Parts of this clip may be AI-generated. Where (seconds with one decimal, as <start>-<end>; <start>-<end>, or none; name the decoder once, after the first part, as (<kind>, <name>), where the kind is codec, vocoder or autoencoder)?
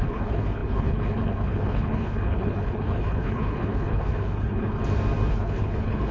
0.0-4.8 (codec, HILCodec); 5.3-6.1